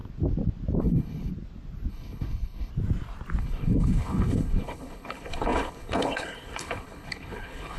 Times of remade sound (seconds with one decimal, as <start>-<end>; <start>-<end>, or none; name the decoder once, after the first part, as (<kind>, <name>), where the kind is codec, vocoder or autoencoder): 0.8-1.3 (codec, HILCodec); 1.9-2.7; 3.4-7.8